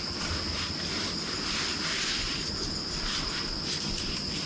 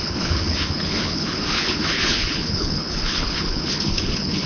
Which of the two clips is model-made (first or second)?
second